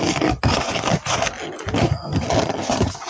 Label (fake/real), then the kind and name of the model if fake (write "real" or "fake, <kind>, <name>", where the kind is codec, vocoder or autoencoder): real